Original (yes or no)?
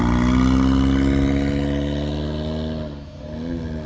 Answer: yes